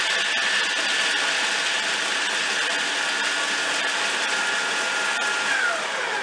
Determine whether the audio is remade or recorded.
recorded